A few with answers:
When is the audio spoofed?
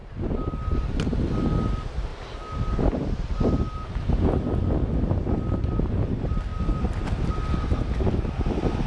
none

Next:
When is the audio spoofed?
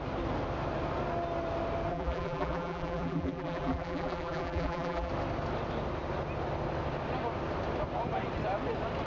1.9-5.1 (vocoder, BigVGAN v2)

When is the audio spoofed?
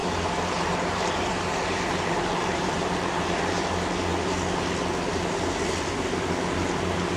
0.0-3.6 (vocoder, BigVGAN v2)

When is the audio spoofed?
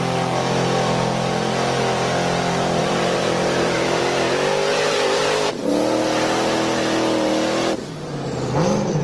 2.8-4.0 (vocoder, BigVGAN v2); 4.7-5.7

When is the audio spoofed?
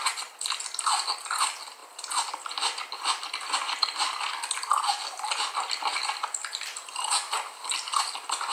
none